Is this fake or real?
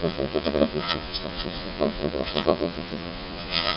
fake